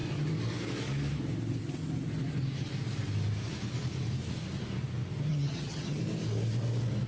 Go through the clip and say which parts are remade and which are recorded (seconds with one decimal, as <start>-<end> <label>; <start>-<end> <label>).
0.0-5.3 recorded; 5.3-6.0 remade; 6.0-7.1 recorded